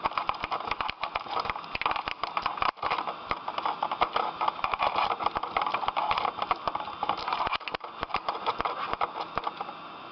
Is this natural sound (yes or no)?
yes